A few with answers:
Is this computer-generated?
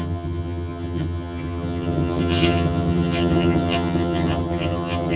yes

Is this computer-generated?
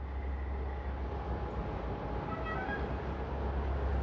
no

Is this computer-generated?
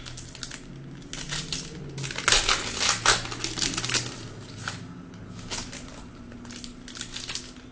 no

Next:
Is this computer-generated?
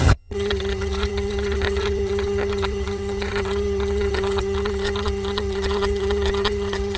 yes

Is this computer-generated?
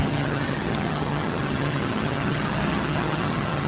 yes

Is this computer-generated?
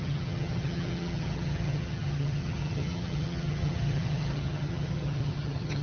yes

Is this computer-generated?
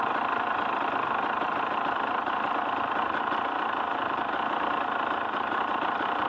no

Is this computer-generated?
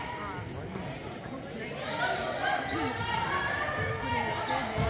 no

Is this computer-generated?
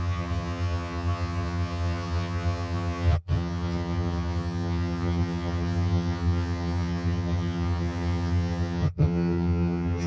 yes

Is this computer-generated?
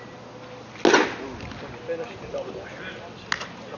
no